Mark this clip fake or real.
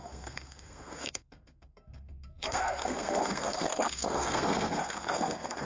fake